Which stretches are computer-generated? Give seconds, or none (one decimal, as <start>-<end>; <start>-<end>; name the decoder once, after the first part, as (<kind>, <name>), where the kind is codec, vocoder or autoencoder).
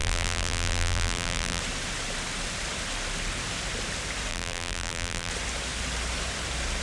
0.0-1.6 (vocoder, BigVGAN v2); 4.3-5.3